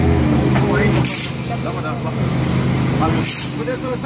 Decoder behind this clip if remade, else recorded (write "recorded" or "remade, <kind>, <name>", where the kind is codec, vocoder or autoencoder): recorded